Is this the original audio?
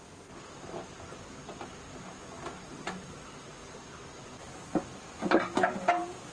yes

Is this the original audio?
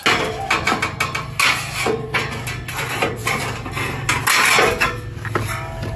yes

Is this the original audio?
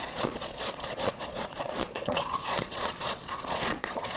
no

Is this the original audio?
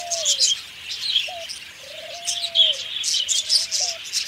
yes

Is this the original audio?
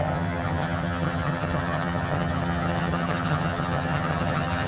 no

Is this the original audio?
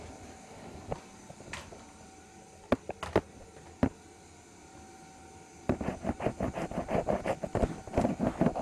yes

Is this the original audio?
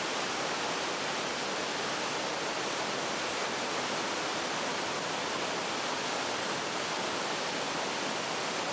yes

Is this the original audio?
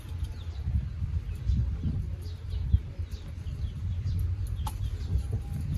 yes